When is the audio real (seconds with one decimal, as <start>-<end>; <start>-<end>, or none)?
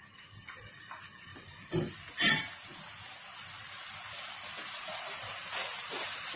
0.0-6.4